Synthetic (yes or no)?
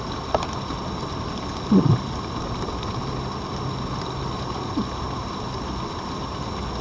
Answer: no